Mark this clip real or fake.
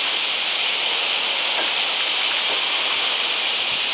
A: real